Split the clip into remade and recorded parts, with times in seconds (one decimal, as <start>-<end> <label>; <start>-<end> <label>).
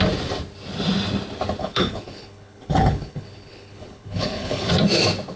0.0-1.6 recorded; 1.6-4.7 remade; 4.7-5.4 recorded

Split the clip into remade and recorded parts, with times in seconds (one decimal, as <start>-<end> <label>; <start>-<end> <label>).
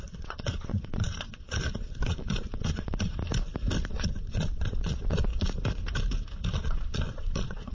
0.0-3.2 remade; 3.2-3.9 recorded; 3.9-5.3 remade; 5.3-6.5 recorded; 6.5-7.7 remade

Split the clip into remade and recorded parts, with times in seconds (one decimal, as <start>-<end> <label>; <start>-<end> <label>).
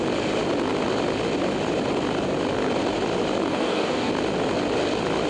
0.0-3.5 recorded; 3.5-4.1 remade; 4.1-5.3 recorded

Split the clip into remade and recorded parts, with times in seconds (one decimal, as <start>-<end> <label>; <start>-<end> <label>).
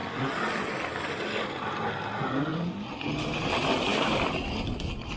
0.0-5.2 recorded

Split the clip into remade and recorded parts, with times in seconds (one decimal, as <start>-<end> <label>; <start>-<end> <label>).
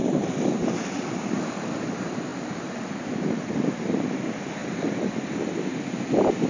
0.0-4.6 remade; 4.6-6.5 recorded